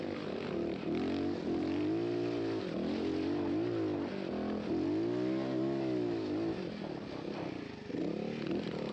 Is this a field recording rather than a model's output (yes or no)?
yes